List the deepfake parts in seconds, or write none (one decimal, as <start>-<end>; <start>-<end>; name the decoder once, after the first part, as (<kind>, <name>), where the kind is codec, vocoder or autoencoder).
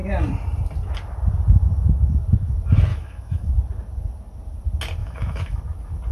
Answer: 2.9-3.5 (autoencoder, DAC-VAE); 5.0-5.6